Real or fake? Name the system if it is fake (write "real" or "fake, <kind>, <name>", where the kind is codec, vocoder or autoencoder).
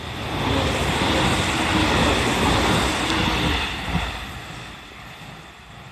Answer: real